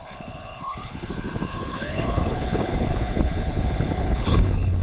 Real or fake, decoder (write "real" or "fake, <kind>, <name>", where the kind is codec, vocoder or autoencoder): fake, codec, HILCodec